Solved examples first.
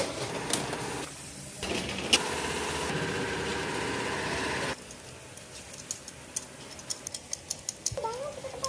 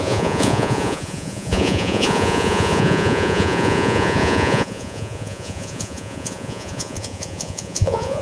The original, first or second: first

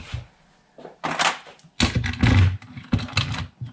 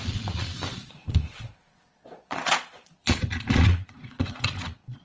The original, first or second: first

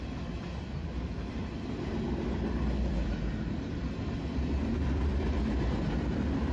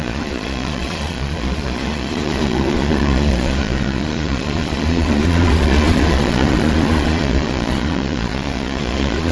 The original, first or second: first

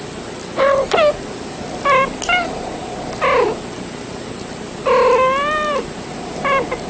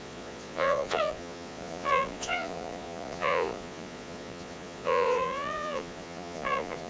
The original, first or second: first